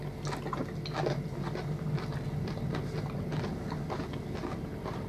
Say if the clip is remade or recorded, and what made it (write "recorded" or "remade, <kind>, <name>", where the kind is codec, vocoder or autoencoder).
recorded